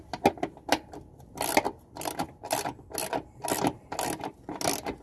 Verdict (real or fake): real